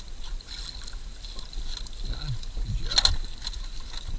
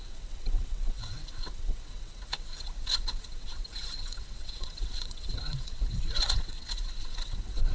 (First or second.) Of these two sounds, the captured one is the first